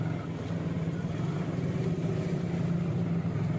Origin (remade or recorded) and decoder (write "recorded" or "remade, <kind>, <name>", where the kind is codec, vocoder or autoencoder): recorded